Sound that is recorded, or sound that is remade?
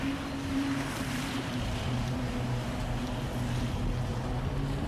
recorded